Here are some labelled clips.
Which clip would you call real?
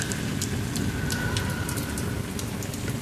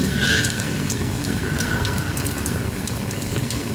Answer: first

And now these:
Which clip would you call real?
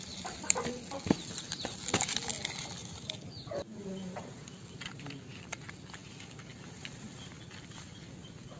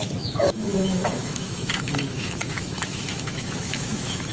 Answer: first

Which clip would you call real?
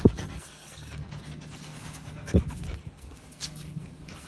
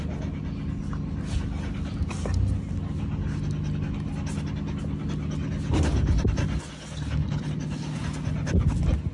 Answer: second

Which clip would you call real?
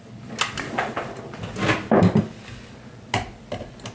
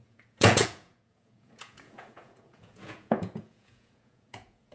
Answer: first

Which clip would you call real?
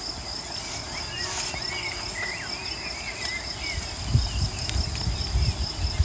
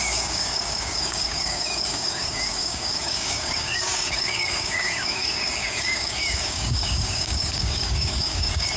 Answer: first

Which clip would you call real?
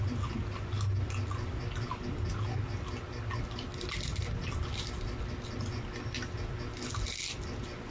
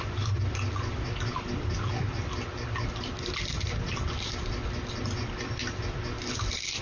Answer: first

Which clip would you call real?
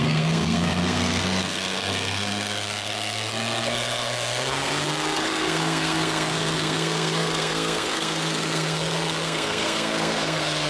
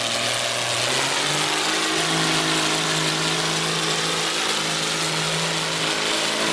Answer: second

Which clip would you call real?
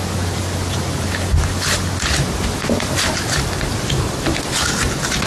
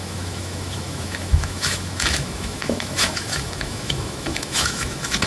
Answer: first